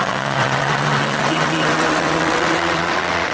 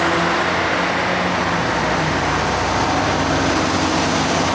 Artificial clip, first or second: first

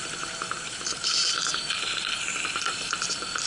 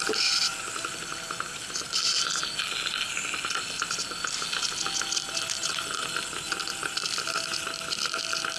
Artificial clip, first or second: first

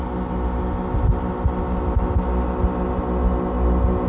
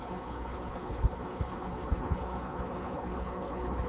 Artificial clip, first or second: second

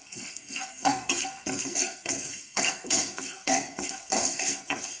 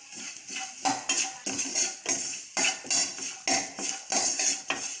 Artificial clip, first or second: first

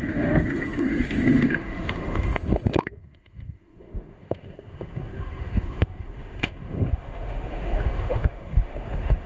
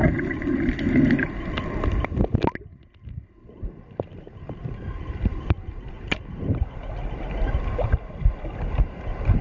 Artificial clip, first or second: first